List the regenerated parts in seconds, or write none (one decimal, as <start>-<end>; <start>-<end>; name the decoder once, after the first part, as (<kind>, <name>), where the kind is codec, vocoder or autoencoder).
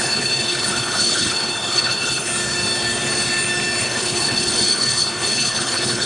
0.0-2.3 (codec, HILCodec); 3.8-6.1